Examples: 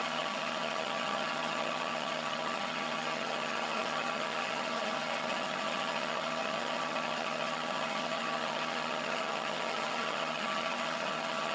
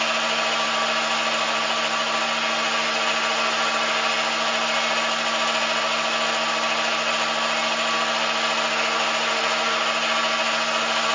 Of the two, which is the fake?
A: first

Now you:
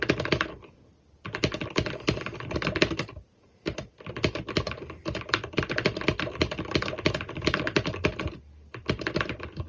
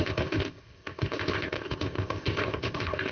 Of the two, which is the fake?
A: second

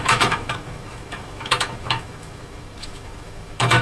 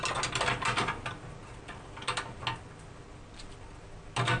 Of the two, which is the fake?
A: first